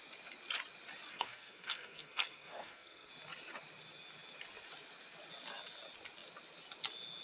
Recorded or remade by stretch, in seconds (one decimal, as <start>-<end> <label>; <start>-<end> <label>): 0.0-1.1 recorded; 1.1-3.1 remade; 3.1-7.2 recorded